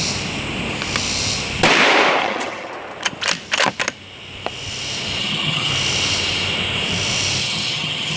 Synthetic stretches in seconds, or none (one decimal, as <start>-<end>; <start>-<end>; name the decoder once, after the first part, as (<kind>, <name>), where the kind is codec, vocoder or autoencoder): 2.2-2.7 (vocoder, HiFi-GAN); 5.2-5.7; 7.4-8.2